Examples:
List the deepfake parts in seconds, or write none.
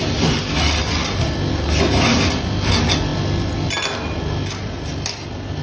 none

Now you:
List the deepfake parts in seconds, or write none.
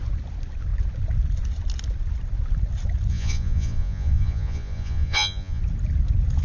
3.1-5.6 (vocoder, Vocos)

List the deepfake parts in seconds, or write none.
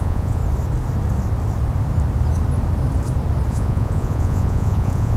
0.0-0.4 (vocoder, Vocos); 3.5-5.2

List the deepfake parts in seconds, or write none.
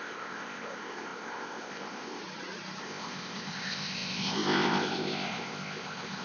0.0-2.2 (codec, ZipCodec); 2.8-6.2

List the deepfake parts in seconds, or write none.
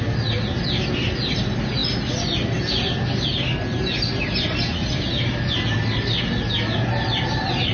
none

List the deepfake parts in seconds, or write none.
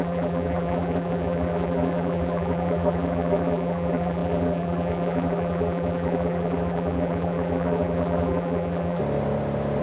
0.0-9.0 (vocoder, BigVGAN v2)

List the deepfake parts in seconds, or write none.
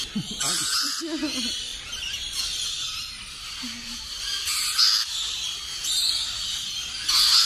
none